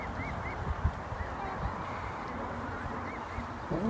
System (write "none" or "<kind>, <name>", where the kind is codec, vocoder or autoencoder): none